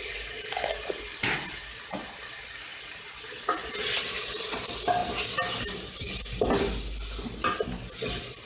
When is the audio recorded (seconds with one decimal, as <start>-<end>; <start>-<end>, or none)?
0.0-8.5